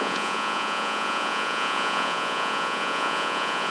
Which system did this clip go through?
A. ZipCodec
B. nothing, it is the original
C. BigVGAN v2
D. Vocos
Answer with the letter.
D